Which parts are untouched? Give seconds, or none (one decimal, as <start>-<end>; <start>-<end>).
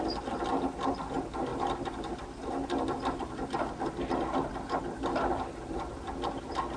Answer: 0.0-6.8